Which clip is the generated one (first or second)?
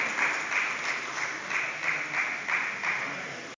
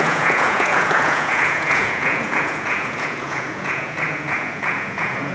second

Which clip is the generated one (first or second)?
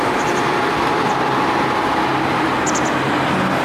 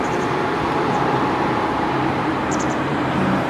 second